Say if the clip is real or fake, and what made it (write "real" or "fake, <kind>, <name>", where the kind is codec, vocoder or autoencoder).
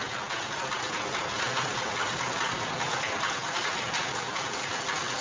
real